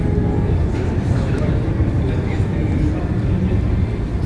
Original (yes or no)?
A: no